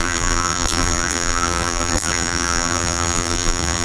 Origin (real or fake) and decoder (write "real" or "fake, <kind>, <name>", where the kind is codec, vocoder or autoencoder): fake, vocoder, BigVGAN v2